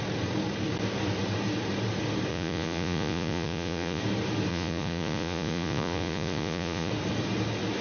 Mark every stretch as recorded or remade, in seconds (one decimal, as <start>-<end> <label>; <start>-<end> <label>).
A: 0.0-2.3 recorded; 2.3-4.0 remade; 4.0-4.5 recorded; 4.5-6.9 remade; 6.9-7.8 recorded